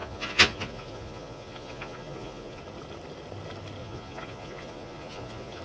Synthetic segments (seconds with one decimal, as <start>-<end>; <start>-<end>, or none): 0.0-2.6; 3.8-5.6